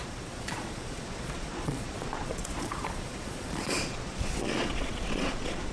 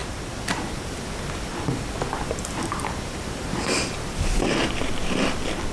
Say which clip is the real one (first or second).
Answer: second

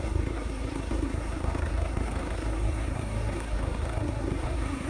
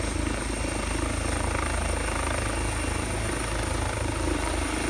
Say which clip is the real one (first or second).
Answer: second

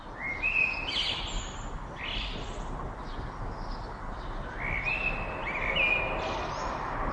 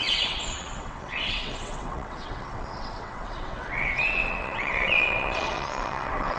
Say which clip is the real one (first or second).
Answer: first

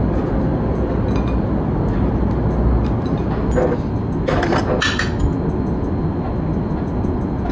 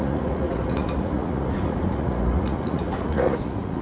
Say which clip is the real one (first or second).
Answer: first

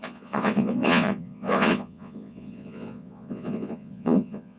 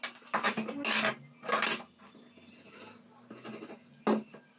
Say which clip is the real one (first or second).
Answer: second